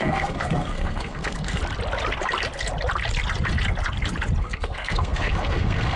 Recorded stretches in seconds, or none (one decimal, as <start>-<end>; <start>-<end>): 1.6-4.4